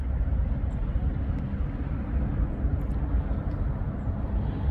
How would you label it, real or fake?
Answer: real